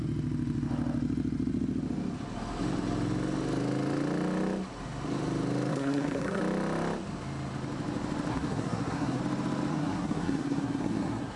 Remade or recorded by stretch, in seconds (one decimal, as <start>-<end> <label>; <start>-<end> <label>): 0.0-5.7 recorded; 5.7-6.4 remade; 6.4-8.3 recorded; 8.3-9.2 remade; 9.2-9.7 recorded; 9.7-11.4 remade